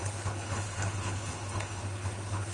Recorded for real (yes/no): no